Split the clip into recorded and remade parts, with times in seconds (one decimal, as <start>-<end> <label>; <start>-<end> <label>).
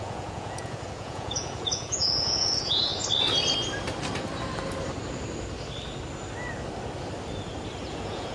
0.0-2.9 remade; 2.9-7.9 recorded; 7.9-8.3 remade